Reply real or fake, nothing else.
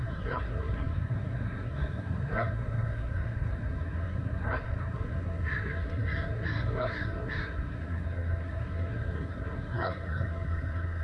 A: fake